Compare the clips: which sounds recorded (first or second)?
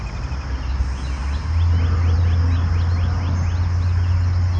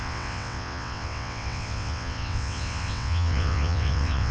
first